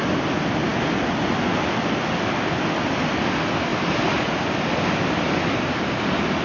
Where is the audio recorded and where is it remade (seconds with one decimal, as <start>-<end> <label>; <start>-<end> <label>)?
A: 0.0-6.4 recorded